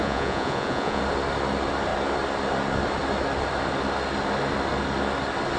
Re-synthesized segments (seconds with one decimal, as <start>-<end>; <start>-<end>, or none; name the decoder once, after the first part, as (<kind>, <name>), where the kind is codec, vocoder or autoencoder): 0.0-1.0 (vocoder, Vocos)